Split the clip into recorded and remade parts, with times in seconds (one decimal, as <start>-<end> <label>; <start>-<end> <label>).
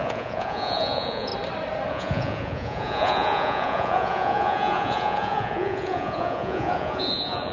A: 0.0-1.3 remade; 1.3-1.9 recorded; 1.9-7.5 remade